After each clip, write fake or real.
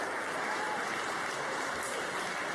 real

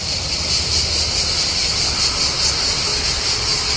real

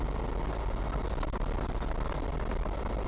real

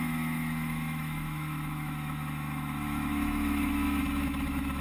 fake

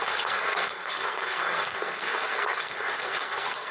fake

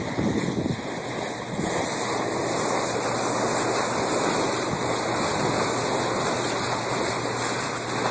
real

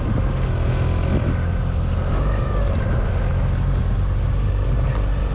real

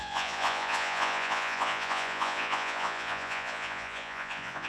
fake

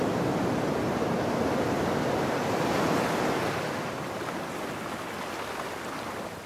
real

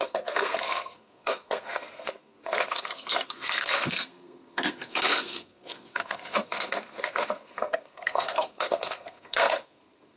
fake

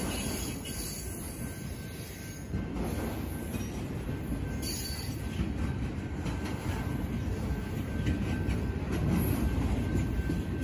real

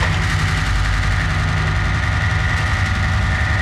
real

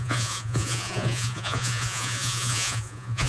fake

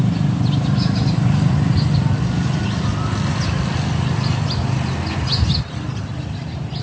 real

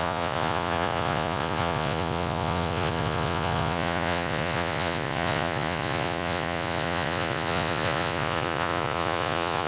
fake